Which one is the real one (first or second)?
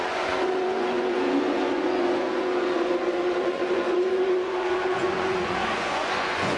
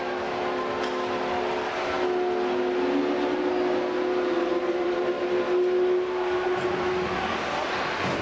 second